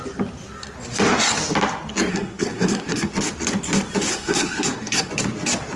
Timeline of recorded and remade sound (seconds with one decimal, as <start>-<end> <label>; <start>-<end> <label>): 0.0-2.1 recorded; 2.1-3.1 remade; 3.1-4.1 recorded; 4.1-5.1 remade; 5.1-5.8 recorded